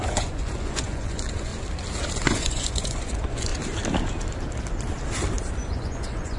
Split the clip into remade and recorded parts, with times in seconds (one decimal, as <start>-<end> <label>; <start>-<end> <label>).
0.0-1.5 remade; 1.5-2.2 recorded; 2.2-3.5 remade; 3.5-5.7 recorded; 5.7-6.4 remade